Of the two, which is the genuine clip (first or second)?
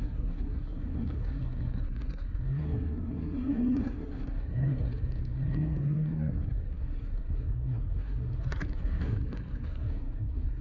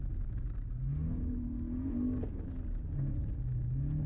second